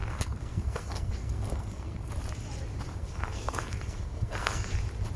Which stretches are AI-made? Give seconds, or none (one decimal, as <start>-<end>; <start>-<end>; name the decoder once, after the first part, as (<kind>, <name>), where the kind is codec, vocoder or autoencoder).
0.0-2.1 (codec, SNAC); 2.9-4.7